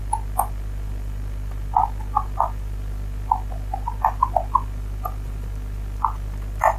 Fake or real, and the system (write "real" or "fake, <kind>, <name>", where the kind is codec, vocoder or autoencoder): real